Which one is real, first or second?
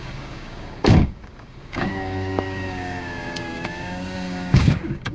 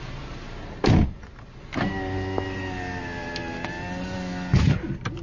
second